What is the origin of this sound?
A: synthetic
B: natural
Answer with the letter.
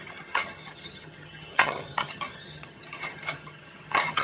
A